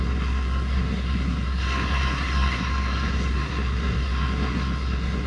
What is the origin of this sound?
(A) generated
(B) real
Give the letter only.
A